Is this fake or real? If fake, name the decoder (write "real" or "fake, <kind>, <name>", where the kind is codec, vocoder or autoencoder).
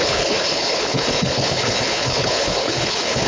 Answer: fake, codec, HILCodec